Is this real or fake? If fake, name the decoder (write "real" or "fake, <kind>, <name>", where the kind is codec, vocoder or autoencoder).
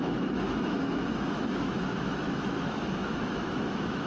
fake, autoencoder, DAC-VAE